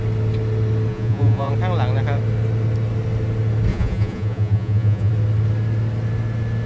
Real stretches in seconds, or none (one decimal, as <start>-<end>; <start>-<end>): 0.0-0.9; 1.5-3.7; 5.1-6.7